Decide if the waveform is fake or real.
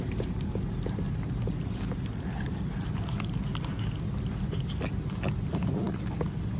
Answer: real